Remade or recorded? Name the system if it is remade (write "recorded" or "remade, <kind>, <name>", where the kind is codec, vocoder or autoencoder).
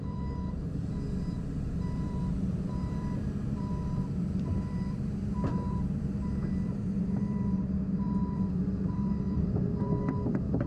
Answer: remade, vocoder, BigVGAN v2